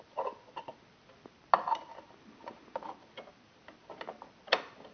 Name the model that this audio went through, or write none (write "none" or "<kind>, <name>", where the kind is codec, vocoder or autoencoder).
none